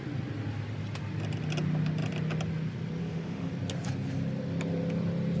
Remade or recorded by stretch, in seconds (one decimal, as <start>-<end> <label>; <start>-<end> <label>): 0.0-3.0 recorded; 3.0-3.5 remade; 3.5-5.4 recorded